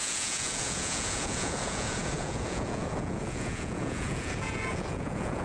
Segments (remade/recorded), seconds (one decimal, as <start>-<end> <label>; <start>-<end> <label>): 0.0-5.4 remade